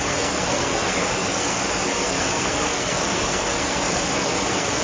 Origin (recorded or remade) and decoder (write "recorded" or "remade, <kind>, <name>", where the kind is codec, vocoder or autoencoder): remade, codec, SNAC